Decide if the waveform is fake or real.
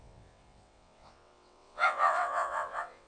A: fake